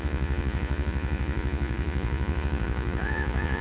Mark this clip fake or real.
fake